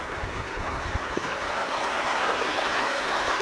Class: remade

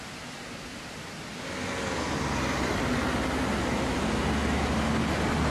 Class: recorded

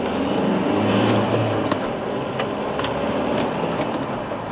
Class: recorded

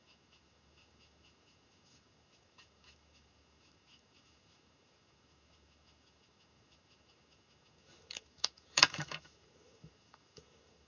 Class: remade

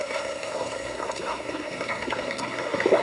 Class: remade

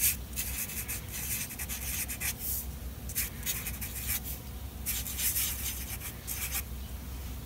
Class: recorded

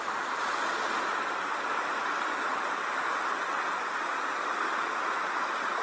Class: recorded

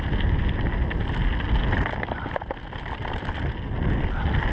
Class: recorded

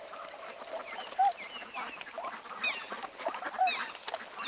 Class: recorded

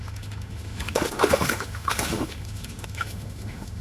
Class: remade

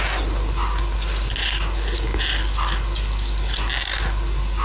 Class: recorded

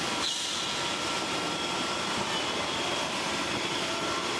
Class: recorded